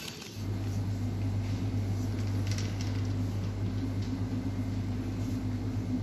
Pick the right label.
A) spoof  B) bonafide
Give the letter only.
B